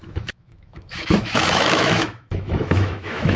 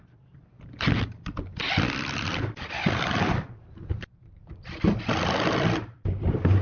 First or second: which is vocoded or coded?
first